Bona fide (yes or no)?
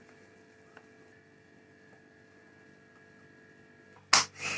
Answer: yes